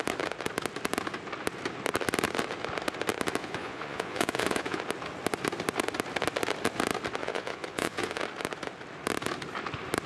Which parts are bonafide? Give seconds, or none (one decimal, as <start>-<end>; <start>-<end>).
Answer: 0.0-3.4; 4.8-7.2; 8.2-10.1